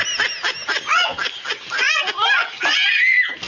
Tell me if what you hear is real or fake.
real